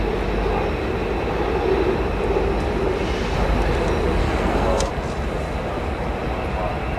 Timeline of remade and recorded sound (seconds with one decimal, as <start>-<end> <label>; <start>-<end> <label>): 0.0-4.2 recorded; 4.2-4.9 remade; 4.9-7.0 recorded